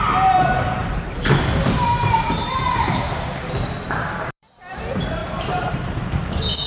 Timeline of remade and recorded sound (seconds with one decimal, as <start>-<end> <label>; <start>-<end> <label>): 0.0-0.8 recorded; 0.8-4.8 remade; 4.8-5.2 recorded; 5.2-5.7 remade; 5.7-6.7 recorded

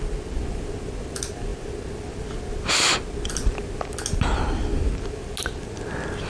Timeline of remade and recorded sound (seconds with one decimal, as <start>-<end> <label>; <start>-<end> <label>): 0.0-6.3 recorded

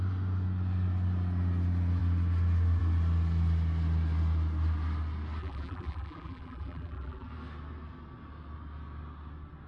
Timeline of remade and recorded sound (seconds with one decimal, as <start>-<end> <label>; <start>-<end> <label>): 0.0-5.4 recorded; 5.4-7.3 remade; 7.3-9.7 recorded

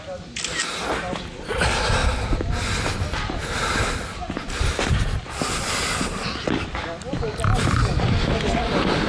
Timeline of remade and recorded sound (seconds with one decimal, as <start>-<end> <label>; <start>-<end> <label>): 0.0-9.1 recorded

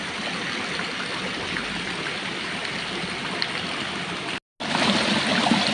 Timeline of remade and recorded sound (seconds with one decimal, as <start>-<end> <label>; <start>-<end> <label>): 0.0-5.7 recorded